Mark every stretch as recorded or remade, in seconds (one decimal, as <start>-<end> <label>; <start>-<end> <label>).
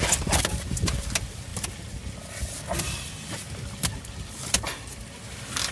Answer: 0.0-5.7 recorded